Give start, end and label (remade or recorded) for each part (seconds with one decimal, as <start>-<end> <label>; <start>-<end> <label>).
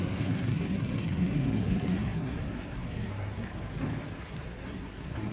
0.0-3.5 remade; 3.5-4.2 recorded; 4.2-5.3 remade